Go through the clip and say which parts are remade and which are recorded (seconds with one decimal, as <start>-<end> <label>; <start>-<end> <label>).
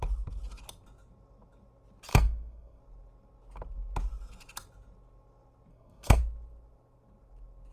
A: 0.0-2.1 recorded; 2.1-2.8 remade; 2.8-5.7 recorded; 5.7-6.2 remade; 6.2-7.7 recorded